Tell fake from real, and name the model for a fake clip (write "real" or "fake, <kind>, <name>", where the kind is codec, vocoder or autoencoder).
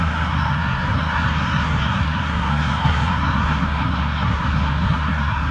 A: fake, codec, SNAC